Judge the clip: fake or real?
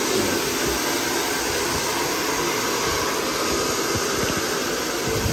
real